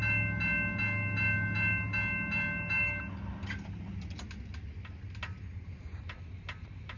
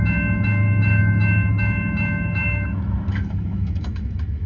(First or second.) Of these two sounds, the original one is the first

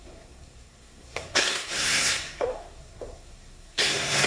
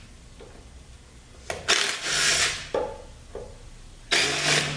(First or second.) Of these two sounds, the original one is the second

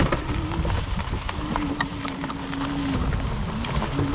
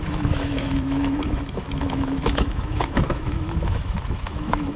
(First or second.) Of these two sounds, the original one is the first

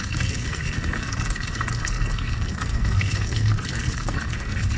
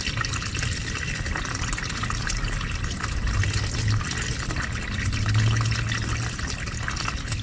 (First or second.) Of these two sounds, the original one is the second